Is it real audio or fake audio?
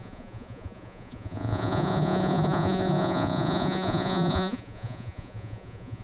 fake